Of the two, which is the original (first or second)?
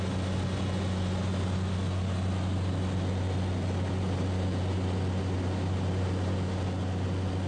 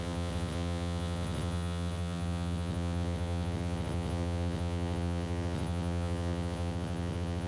first